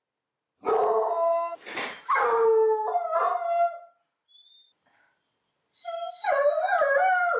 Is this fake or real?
real